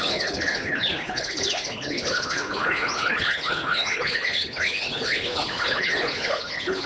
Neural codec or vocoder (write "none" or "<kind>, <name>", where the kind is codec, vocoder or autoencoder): codec, HILCodec